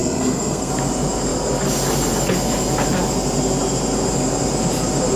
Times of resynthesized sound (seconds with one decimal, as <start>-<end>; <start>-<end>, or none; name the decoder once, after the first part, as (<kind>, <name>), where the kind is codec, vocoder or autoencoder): 0.0-0.7 (codec, SNAC)